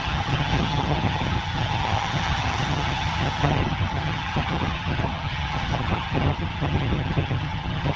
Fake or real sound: fake